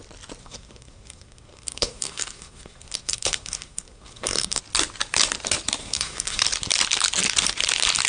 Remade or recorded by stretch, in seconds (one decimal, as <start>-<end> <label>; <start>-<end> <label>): 0.0-0.4 recorded; 0.4-4.6 remade; 4.6-5.8 recorded; 5.8-6.4 remade; 6.4-8.1 recorded